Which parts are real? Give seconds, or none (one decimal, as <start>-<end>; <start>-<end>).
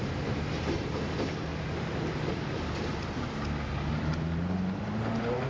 1.5-3.9